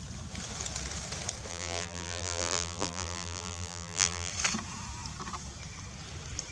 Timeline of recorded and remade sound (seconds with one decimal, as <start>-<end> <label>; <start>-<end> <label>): 0.0-1.5 recorded; 1.5-4.3 remade; 4.3-6.5 recorded